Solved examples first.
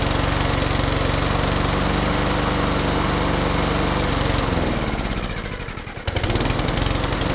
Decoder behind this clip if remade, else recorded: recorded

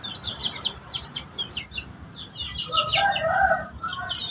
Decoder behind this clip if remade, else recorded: remade, vocoder, BigVGAN v2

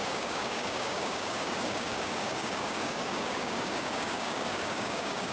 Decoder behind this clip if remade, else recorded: remade, codec, DAC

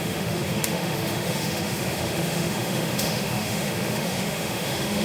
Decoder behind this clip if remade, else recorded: remade, autoencoder, DAC-VAE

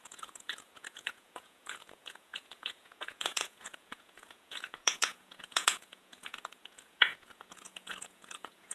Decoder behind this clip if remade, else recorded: remade, vocoder, Vocos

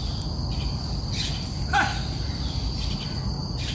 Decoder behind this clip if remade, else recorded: recorded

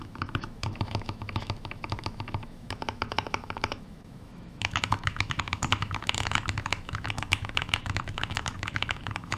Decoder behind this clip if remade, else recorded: remade, autoencoder, DAC-VAE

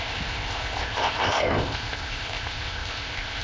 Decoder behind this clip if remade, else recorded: remade, codec, ZipCodec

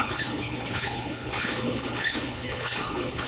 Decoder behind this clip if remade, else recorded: remade, codec, HILCodec